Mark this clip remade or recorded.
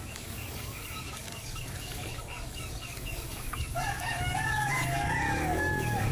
remade